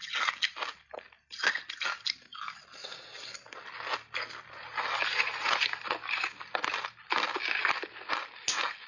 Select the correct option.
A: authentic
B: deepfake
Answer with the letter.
A